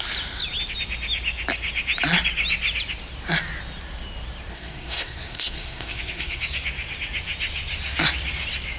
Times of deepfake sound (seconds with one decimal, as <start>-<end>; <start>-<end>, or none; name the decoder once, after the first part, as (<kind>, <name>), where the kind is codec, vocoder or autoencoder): 4.5-6.4 (codec, SNAC)